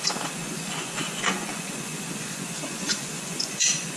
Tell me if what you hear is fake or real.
fake